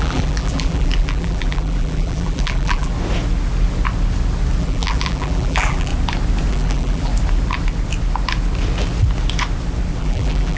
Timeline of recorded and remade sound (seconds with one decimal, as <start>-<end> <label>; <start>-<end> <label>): 0.0-2.9 remade; 2.9-4.6 recorded; 4.6-5.9 remade; 5.9-6.5 recorded; 6.5-7.1 remade; 7.1-10.0 recorded; 10.0-10.6 remade